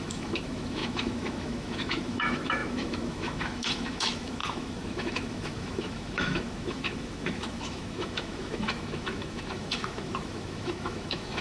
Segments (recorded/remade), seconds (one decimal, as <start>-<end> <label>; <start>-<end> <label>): 0.0-11.4 remade